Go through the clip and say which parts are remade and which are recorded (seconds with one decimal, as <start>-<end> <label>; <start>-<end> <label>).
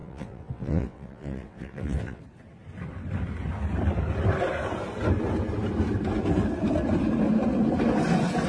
0.0-2.2 remade; 2.2-8.5 recorded